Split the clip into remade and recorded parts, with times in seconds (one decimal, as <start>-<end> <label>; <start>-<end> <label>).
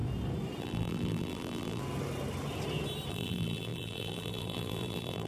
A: 0.0-0.6 recorded; 0.6-1.8 remade; 1.8-3.1 recorded; 3.1-5.3 remade